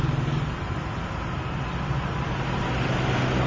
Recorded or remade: recorded